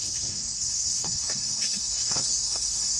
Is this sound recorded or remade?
remade